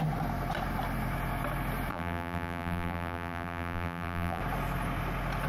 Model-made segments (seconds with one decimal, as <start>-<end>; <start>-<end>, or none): 1.9-4.4